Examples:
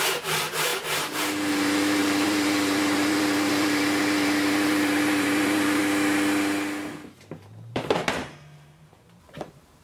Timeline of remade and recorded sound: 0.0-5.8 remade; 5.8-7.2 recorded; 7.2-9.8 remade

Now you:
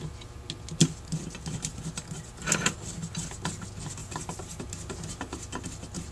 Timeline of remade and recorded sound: 0.0-4.0 recorded; 4.0-4.6 remade; 4.6-6.1 recorded

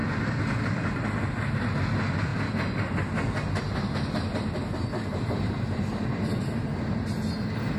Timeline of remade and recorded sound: 0.0-7.8 recorded

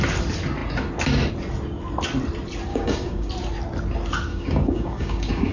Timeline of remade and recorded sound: 0.0-2.7 recorded; 2.7-3.3 remade; 3.3-4.3 recorded; 4.3-5.5 remade